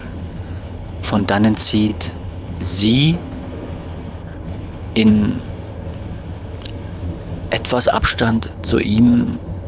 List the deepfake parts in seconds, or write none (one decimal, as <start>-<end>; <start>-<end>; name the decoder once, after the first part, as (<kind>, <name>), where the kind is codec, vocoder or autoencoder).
0.0-1.2 (codec, HILCodec); 1.9-3.4; 4.3-5.1; 7.9-9.7